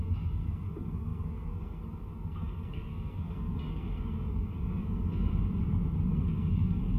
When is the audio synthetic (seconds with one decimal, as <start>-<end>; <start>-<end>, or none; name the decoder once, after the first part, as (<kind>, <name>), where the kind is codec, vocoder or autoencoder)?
0.0-5.3 (codec, SNAC); 6.1-7.0